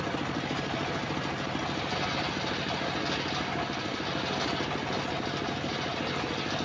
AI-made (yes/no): no